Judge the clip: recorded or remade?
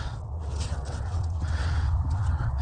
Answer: remade